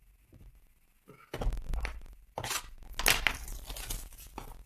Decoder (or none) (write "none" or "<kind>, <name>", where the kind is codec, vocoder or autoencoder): none